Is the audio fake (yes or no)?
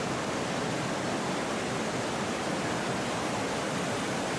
no